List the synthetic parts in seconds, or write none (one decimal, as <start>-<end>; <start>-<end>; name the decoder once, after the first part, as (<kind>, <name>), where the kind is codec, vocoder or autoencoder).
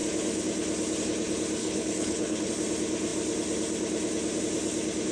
1.6-2.5 (codec, HILCodec)